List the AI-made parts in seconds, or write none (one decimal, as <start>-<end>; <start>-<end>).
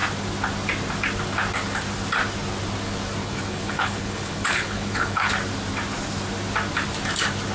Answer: 3.2-5.3